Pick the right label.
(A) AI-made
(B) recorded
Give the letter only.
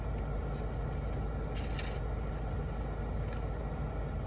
B